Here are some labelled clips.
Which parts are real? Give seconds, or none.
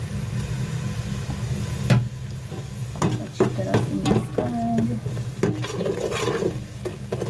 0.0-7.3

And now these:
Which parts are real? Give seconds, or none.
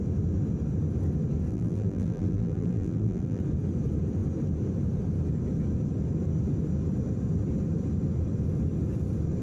0.0-1.5; 3.4-9.4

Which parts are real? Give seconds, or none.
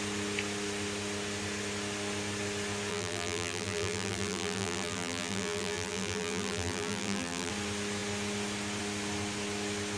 0.0-2.9; 7.5-10.0